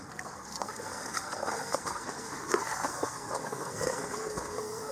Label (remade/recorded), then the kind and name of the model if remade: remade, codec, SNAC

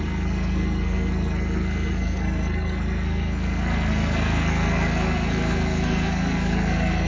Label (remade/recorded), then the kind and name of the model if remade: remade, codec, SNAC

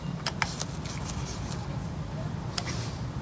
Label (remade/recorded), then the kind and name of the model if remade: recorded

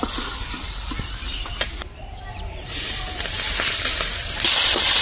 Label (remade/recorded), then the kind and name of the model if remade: recorded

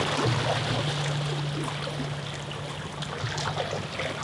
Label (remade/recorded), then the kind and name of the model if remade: recorded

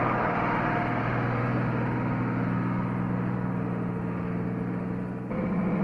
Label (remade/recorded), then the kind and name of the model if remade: recorded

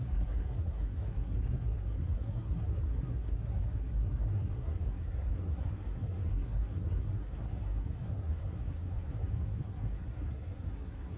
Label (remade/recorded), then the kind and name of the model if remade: remade, codec, SNAC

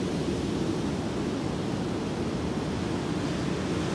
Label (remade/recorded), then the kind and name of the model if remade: recorded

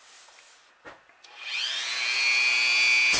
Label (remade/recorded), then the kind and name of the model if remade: recorded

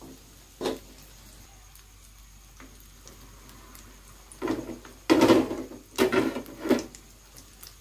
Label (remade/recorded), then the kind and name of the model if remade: recorded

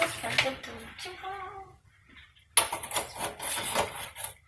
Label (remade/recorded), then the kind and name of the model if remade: recorded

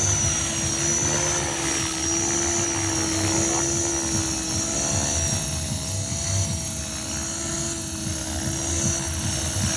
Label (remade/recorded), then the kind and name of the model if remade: recorded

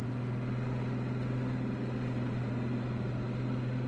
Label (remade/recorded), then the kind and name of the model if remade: recorded